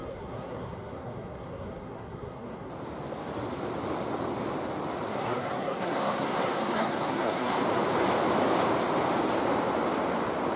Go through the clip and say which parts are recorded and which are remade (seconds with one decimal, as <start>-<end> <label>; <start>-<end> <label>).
0.0-2.7 remade; 2.7-5.1 recorded; 5.1-7.6 remade; 7.6-10.6 recorded